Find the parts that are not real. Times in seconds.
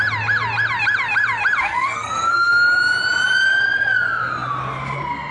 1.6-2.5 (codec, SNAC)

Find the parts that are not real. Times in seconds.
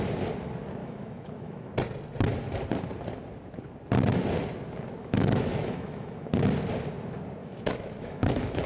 0.8-1.7 (autoencoder, DAC-VAE); 5.0-6.3; 7.4-8.7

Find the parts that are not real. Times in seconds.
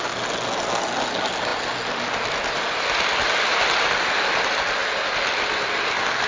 none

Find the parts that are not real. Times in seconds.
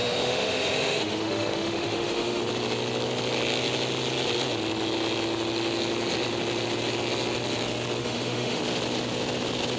0.0-2.4 (autoencoder, DAC-VAE); 8.0-8.6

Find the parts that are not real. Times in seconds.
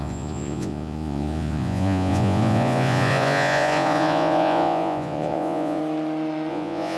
0.0-5.8 (vocoder, Vocos); 6.5-7.0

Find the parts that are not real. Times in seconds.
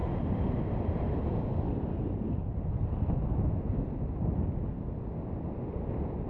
none